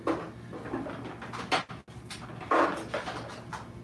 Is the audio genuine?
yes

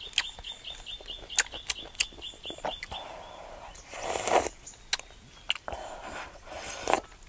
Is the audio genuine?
yes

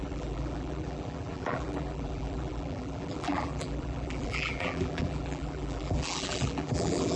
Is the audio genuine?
no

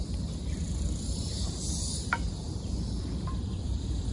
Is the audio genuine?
no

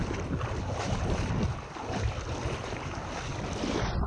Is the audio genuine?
yes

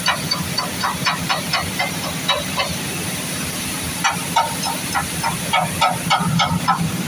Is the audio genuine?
no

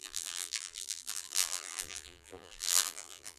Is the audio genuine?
no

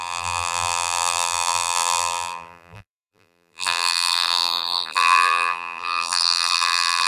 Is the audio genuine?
no